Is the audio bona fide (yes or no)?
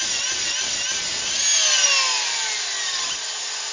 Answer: yes